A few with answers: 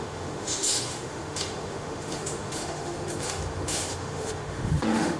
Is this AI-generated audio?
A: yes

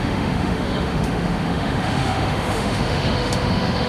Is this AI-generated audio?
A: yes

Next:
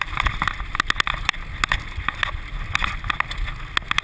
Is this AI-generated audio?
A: no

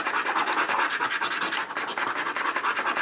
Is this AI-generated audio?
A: no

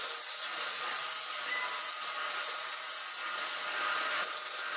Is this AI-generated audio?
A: no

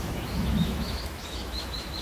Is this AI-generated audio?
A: yes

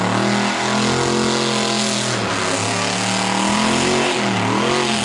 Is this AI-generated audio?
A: no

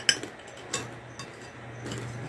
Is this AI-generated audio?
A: no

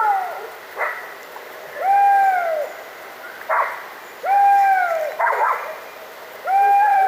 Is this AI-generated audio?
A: no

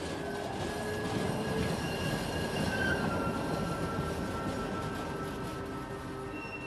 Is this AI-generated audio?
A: no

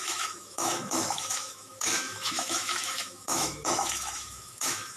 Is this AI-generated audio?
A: yes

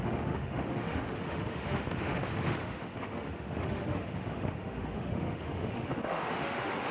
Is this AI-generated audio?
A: yes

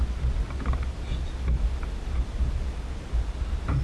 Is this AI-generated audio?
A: no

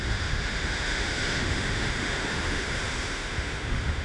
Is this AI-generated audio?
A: yes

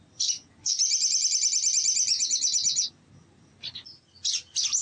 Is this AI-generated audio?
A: no